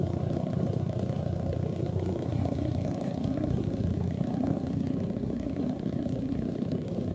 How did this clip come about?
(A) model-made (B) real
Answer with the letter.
A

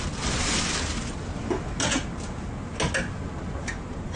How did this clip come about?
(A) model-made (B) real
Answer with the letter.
B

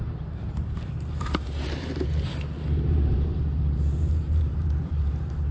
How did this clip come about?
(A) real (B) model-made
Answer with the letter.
B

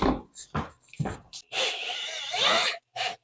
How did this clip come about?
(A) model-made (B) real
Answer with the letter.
B